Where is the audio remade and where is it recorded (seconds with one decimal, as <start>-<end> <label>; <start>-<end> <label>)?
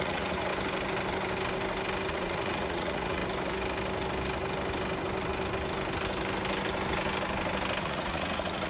0.0-0.5 remade; 0.5-2.1 recorded; 2.1-3.2 remade; 3.2-7.8 recorded; 7.8-8.7 remade